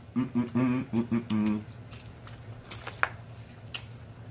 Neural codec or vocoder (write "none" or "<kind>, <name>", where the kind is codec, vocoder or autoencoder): none